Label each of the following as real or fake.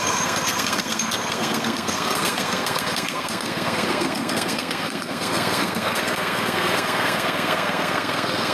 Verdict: fake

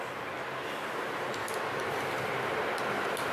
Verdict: real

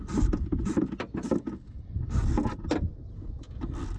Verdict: real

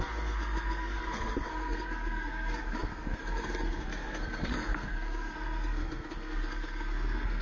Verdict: fake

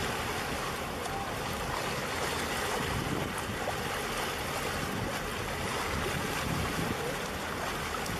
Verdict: real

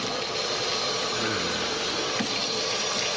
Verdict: real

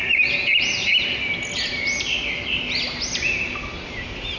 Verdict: real